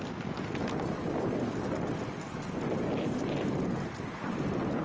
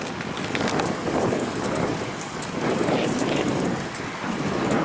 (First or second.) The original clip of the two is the first